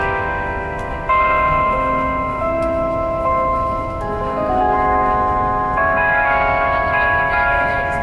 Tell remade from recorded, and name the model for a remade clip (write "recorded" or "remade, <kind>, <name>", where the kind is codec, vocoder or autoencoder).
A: remade, autoencoder, DAC-VAE